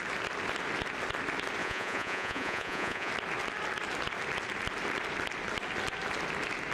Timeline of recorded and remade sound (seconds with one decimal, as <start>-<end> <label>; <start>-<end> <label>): 0.0-1.6 recorded; 1.6-3.1 remade; 3.1-6.7 recorded